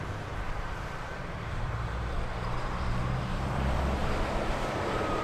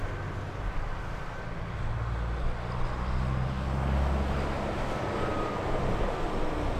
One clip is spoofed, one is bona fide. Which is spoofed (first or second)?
first